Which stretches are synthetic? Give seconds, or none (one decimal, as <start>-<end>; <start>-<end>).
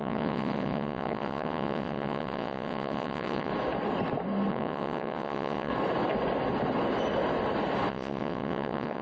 0.0-3.5; 4.5-5.7; 7.9-9.0